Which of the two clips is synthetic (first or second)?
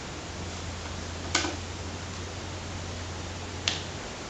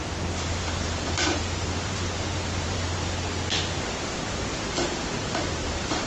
second